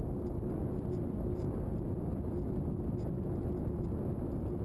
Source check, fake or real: real